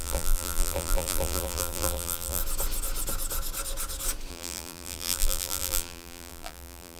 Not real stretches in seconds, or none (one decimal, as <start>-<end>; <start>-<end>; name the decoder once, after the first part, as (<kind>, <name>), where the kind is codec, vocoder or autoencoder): 0.0-2.4 (vocoder, BigVGAN v2); 4.3-7.0